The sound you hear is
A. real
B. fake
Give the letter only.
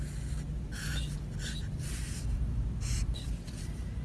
A